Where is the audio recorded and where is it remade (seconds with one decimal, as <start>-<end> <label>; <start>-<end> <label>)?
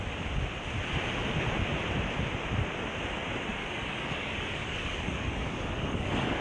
0.0-3.5 recorded; 3.5-6.4 remade